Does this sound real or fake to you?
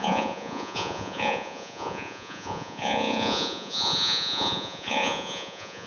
fake